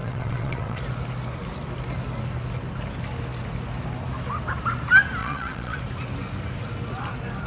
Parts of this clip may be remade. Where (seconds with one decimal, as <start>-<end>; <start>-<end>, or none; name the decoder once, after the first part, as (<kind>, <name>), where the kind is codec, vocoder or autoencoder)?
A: 0.0-0.8 (vocoder, WaveNeXt); 5.2-5.8